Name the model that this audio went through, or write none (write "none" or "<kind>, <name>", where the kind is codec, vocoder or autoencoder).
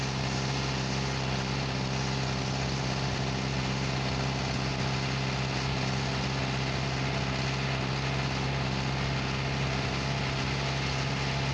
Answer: none